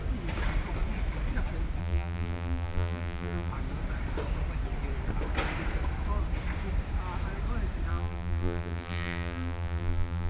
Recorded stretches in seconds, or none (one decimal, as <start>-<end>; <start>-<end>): 0.0-1.8; 3.5-7.9